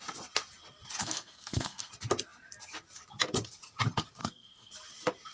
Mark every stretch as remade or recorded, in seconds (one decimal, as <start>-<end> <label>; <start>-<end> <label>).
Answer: 0.0-1.0 recorded; 1.0-1.9 remade; 1.9-4.2 recorded; 4.2-4.7 remade; 4.7-5.3 recorded

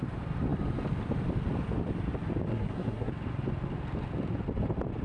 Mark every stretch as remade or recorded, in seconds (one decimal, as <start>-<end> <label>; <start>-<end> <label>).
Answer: 0.0-2.5 recorded; 2.5-3.1 remade; 3.1-5.0 recorded

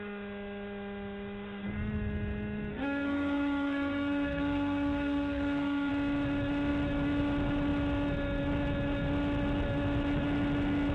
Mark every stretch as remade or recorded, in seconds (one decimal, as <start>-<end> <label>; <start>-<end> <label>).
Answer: 0.0-2.7 recorded; 2.7-5.9 remade; 5.9-10.9 recorded

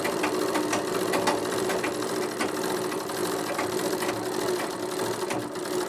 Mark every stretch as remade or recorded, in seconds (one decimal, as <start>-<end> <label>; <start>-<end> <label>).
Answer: 0.0-5.9 recorded